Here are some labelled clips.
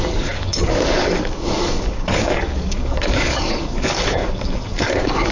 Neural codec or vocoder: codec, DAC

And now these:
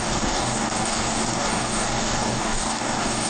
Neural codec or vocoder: codec, DAC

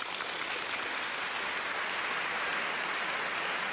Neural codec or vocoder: none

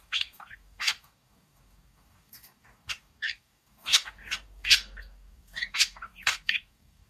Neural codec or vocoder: codec, DAC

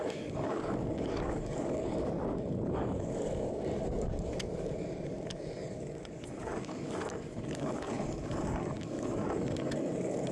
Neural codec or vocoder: codec, DAC